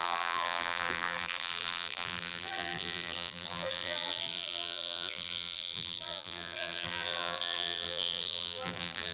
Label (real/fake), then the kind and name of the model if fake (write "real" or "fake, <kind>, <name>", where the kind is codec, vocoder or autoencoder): fake, vocoder, BigVGAN v2